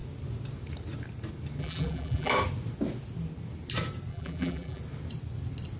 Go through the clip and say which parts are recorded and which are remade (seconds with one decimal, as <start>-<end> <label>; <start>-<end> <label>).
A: 0.0-1.6 recorded; 1.6-2.3 remade; 2.3-4.1 recorded; 4.1-4.8 remade; 4.8-5.8 recorded